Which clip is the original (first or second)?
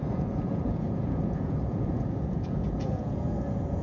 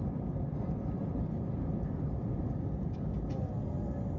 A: second